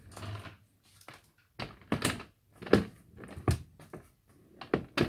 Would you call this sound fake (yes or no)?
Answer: no